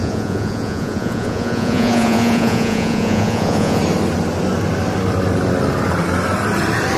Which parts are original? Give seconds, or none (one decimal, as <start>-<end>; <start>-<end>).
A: 3.8-7.0